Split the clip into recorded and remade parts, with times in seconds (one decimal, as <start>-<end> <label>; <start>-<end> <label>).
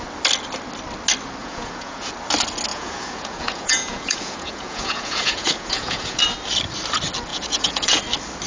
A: 0.0-1.4 recorded; 1.4-2.1 remade; 2.1-2.7 recorded; 2.7-6.2 remade; 6.2-7.3 recorded; 7.3-8.0 remade; 8.0-8.5 recorded